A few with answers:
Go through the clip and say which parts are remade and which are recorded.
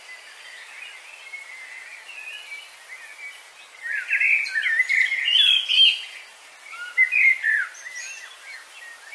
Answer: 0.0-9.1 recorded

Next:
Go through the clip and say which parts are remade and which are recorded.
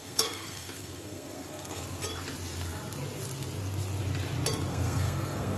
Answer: 0.0-1.8 remade; 1.8-4.7 recorded; 4.7-5.6 remade